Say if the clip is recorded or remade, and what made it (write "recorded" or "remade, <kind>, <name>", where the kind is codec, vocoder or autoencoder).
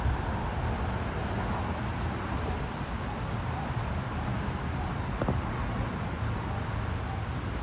recorded